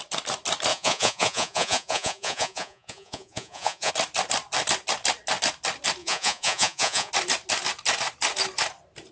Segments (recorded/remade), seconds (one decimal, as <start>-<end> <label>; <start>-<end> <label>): 0.0-0.7 recorded; 0.7-3.9 remade; 3.9-6.0 recorded; 6.0-7.1 remade; 7.1-9.1 recorded